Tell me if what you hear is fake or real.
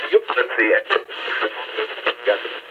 fake